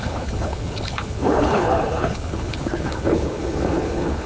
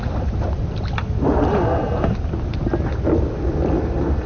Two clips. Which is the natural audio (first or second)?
second